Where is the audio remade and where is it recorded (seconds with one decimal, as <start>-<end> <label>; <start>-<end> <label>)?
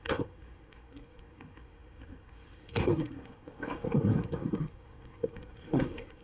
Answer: 0.0-6.2 remade